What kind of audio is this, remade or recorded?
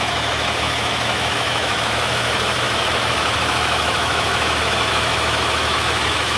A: remade